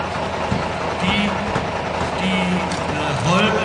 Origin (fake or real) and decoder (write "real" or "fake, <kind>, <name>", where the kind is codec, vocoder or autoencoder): real